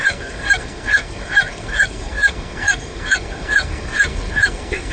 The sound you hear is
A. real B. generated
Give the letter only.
B